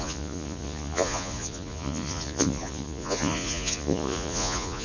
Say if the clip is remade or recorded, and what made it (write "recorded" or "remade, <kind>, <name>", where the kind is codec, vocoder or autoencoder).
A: remade, vocoder, Vocos